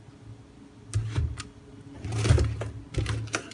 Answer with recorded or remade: recorded